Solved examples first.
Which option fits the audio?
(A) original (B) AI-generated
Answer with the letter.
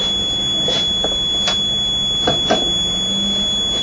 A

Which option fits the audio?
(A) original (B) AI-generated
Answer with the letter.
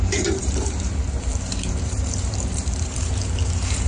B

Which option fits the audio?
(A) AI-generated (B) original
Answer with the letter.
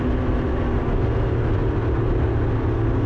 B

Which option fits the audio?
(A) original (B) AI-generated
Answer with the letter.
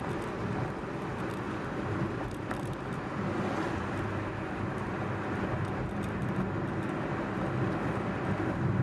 A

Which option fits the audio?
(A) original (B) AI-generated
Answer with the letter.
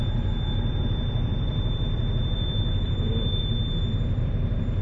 B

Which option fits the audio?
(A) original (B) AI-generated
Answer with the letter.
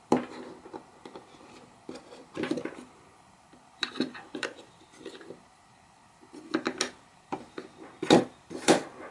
B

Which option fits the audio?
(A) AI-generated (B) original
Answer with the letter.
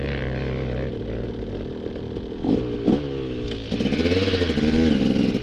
B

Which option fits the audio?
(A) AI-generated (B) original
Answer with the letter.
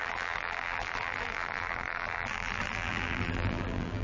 A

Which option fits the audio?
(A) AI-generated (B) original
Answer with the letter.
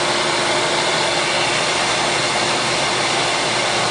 B